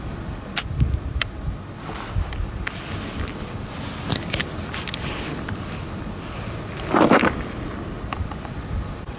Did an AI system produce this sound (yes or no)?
no